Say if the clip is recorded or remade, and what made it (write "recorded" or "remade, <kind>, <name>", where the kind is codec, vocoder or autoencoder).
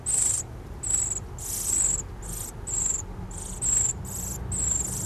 recorded